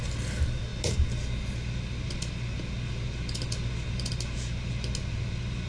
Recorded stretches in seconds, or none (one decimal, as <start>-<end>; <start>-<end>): 0.0-5.7